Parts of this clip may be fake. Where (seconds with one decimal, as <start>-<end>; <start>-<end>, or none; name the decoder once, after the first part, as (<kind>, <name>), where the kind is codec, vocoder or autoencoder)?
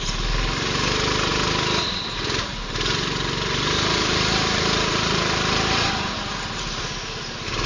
none